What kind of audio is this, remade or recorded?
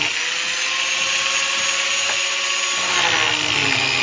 recorded